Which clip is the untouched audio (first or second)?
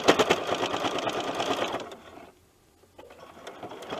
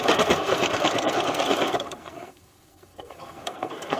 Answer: first